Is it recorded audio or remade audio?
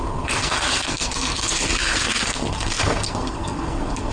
remade